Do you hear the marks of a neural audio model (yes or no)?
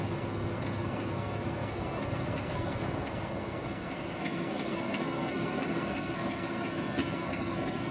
yes